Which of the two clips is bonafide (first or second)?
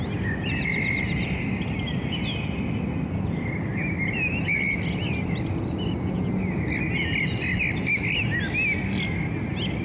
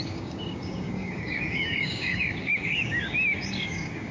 first